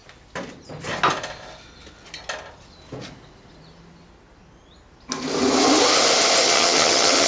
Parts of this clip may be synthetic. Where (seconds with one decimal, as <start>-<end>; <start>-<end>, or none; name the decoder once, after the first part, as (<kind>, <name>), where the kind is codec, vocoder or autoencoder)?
6.4-7.3 (vocoder, HiFi-GAN)